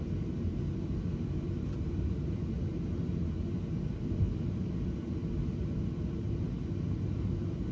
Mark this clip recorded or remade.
recorded